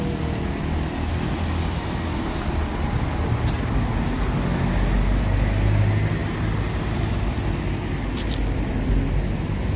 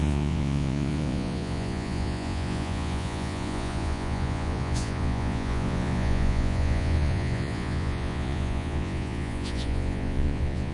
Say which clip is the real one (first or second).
first